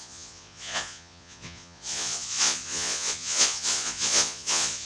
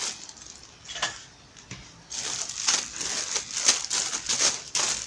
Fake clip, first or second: first